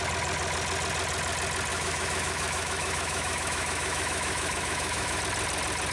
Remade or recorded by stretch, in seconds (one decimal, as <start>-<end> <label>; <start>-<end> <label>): 0.0-1.7 recorded; 1.7-5.2 remade; 5.2-5.9 recorded